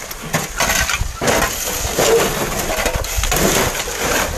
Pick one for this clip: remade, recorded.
recorded